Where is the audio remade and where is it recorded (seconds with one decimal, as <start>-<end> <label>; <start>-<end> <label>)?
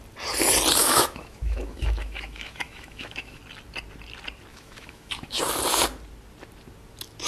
0.0-0.8 recorded; 0.8-3.4 remade; 3.4-4.5 recorded; 4.5-5.4 remade; 5.4-7.3 recorded